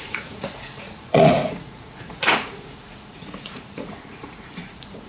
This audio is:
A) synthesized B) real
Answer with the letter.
A